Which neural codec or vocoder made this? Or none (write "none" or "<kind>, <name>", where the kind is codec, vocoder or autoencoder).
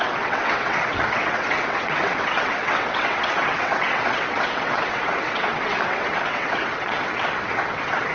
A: vocoder, WaveNeXt